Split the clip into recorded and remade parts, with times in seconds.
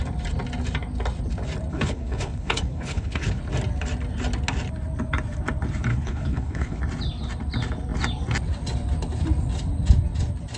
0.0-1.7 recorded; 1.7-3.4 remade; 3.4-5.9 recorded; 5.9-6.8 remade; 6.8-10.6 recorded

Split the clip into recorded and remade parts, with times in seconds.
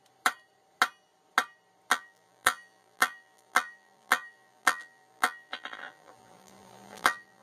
0.0-1.9 recorded; 1.9-7.4 remade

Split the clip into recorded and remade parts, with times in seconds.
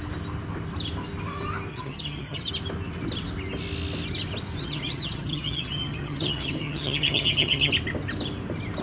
0.0-1.7 recorded; 1.7-2.5 remade; 2.5-4.6 recorded; 4.6-7.7 remade; 7.7-8.8 recorded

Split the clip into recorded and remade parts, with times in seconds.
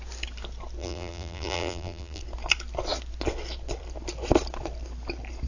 0.0-0.8 recorded; 0.8-2.2 remade; 2.2-5.5 recorded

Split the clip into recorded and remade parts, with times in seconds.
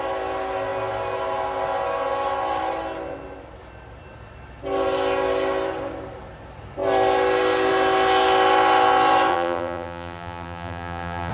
0.0-9.3 recorded; 9.3-11.3 remade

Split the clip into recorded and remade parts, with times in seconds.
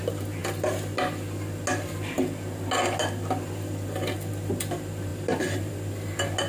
0.0-6.5 recorded